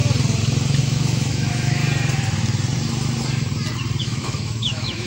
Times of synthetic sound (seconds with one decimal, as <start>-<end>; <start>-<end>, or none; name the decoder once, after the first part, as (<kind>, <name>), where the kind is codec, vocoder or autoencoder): 0.8-1.8 (autoencoder, DAC-VAE); 4.0-5.1